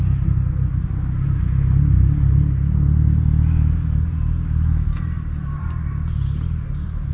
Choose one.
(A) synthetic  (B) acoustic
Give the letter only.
B